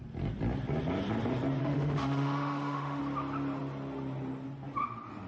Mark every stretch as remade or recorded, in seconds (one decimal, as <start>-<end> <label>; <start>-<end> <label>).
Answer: 0.0-1.6 recorded; 1.6-3.0 remade; 3.0-5.3 recorded